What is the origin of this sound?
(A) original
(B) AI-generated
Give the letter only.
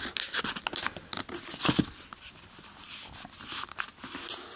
A